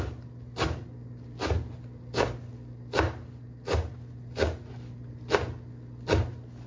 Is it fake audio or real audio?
real